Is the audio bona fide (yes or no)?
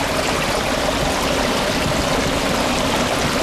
yes